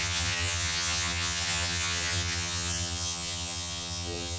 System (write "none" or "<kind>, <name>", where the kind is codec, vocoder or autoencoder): vocoder, HiFi-GAN